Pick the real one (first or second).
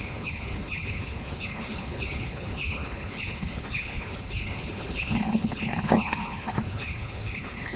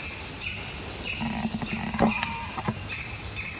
second